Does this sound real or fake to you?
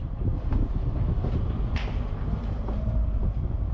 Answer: fake